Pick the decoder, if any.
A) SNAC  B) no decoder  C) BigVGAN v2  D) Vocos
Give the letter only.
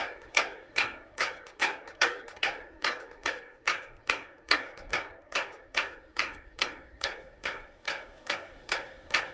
A